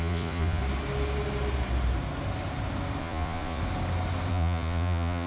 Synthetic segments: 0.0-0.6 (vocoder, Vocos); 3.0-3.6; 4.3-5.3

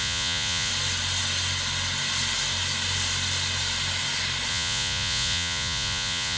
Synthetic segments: 0.0-0.7 (vocoder, Vocos); 4.5-6.4

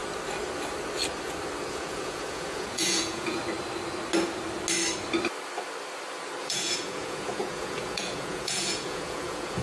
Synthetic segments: 1.7-3.4 (vocoder, Vocos); 6.4-9.6